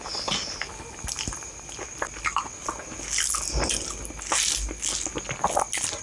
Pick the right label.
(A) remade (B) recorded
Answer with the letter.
B